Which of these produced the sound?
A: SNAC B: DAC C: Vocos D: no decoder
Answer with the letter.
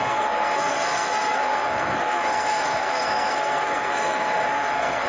A